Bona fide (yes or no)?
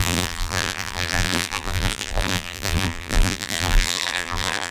no